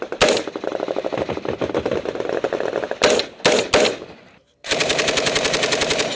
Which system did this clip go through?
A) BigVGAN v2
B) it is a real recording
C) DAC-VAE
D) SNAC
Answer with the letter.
B